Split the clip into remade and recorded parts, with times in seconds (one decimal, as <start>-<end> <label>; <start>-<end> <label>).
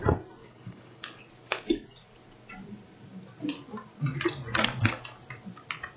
0.0-0.4 recorded; 0.4-1.2 remade; 1.2-6.0 recorded